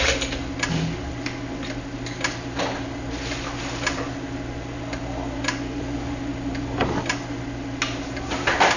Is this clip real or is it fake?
real